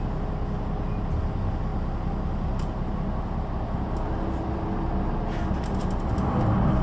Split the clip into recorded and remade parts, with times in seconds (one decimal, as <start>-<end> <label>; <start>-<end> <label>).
0.0-6.8 recorded